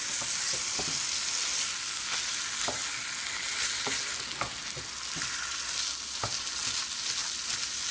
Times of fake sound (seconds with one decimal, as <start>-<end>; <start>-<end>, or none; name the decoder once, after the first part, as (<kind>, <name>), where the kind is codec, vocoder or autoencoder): none